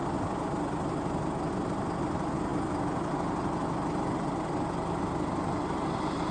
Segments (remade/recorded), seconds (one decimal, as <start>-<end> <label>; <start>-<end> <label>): 0.0-6.3 recorded